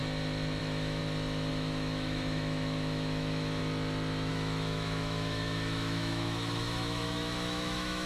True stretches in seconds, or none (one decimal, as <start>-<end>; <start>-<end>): 0.0-0.6; 1.0-1.5; 3.6-4.3